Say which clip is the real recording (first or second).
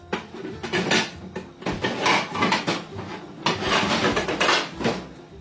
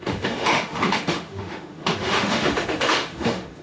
first